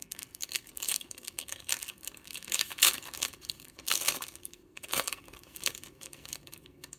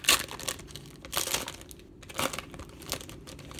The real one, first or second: second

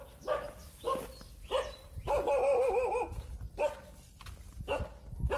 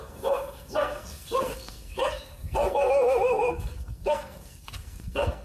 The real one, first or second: first